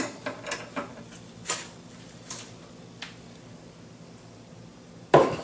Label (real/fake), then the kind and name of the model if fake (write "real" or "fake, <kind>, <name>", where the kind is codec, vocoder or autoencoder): real